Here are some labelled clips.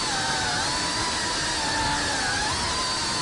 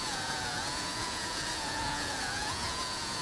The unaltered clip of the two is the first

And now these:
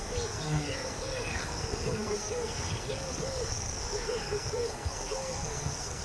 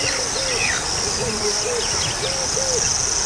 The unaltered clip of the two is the second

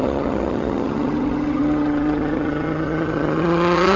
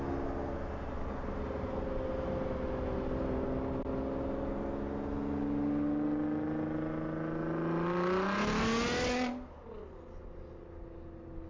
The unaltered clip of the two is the second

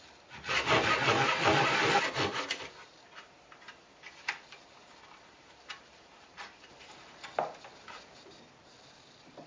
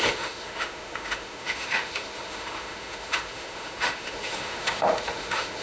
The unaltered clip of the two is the first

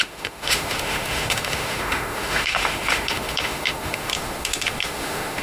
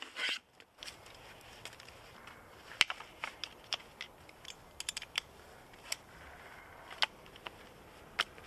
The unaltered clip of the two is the second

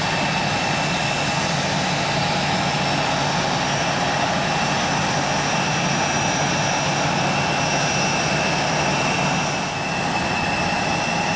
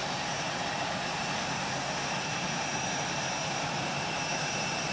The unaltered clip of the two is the first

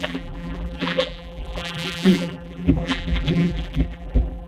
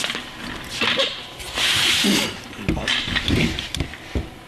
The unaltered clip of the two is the second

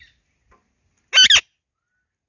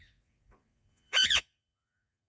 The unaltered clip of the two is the first